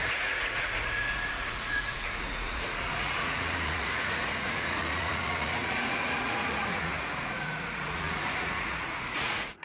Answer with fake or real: fake